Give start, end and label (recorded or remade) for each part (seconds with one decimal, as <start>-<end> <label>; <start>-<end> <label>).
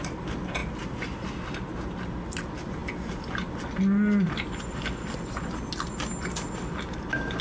0.0-7.4 recorded